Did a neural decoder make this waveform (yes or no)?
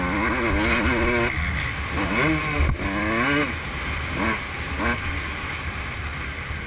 no